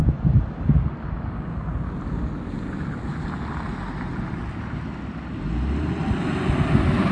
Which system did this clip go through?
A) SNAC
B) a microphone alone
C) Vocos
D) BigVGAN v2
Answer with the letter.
B